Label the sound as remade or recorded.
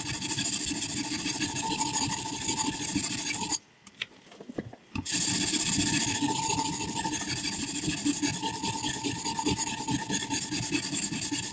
remade